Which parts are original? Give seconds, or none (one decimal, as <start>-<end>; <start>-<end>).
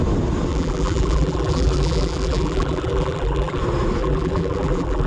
0.0-0.5; 3.6-4.0